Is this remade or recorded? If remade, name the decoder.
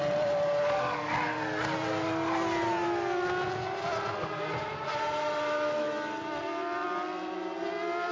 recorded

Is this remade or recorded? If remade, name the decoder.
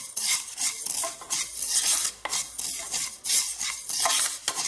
recorded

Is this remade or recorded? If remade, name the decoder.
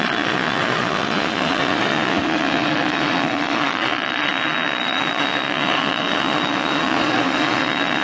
remade, vocoder, Vocos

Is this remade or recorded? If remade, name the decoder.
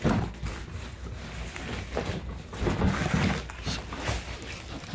recorded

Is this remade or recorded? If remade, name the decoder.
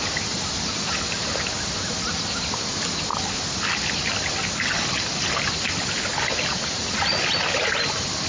recorded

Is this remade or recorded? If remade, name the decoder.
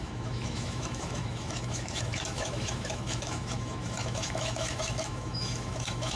remade, autoencoder, DAC-VAE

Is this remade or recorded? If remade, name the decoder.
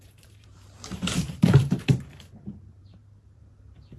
remade, vocoder, BigVGAN v2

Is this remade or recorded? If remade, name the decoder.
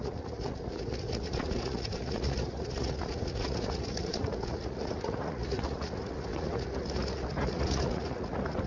remade, vocoder, Vocos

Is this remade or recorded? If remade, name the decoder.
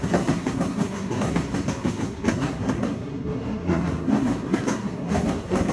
remade, codec, SNAC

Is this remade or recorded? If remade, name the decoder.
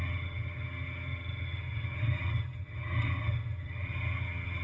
remade, vocoder, HiFi-GAN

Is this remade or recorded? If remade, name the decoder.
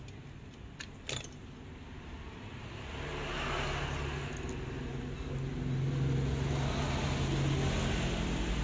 recorded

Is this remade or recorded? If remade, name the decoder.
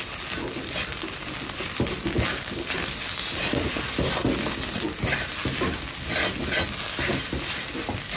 recorded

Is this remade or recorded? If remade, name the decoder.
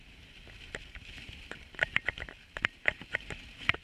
recorded